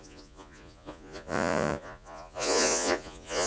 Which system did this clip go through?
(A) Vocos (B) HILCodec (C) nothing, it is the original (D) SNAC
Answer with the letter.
A